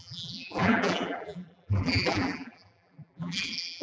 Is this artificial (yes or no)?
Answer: yes